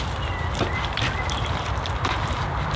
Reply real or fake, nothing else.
fake